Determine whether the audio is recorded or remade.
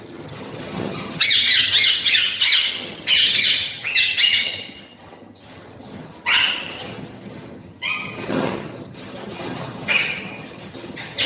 remade